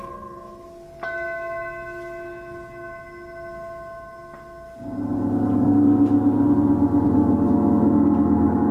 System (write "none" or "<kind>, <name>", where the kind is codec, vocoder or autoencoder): none